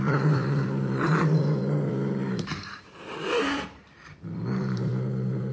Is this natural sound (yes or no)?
no